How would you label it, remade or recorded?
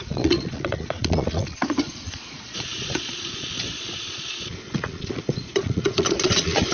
remade